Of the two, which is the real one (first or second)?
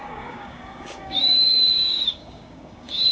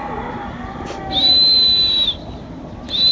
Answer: second